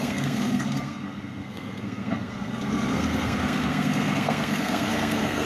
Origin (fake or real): fake